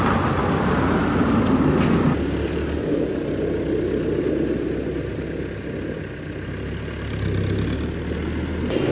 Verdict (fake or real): real